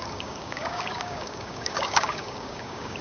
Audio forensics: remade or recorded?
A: remade